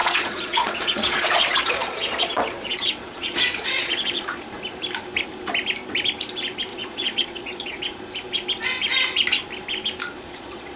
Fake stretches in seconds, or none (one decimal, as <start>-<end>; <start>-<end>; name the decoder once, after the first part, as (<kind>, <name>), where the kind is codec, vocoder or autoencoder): 0.0-4.5 (vocoder, Vocos); 6.7-7.8; 10.1-10.8